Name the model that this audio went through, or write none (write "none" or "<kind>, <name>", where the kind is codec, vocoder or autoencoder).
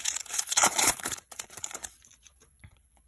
vocoder, Vocos